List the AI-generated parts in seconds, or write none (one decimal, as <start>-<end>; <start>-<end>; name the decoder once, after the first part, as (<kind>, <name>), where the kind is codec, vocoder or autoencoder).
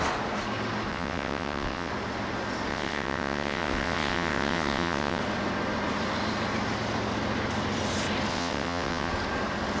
0.9-1.9 (vocoder, WaveNeXt); 2.7-5.2; 8.3-9.1